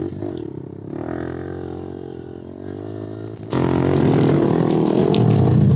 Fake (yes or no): no